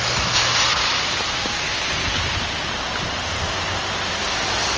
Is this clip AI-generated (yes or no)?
no